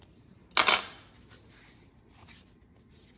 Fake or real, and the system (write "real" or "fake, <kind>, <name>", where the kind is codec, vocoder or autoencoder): real